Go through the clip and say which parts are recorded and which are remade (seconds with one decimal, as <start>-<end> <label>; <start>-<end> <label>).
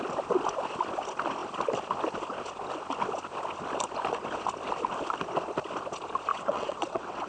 0.0-6.3 recorded; 6.3-7.3 remade